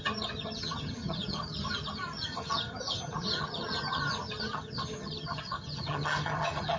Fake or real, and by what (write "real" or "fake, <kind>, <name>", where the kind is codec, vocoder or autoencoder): fake, vocoder, HiFi-GAN